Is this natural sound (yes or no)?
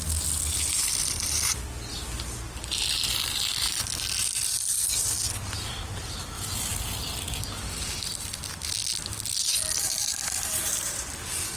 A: yes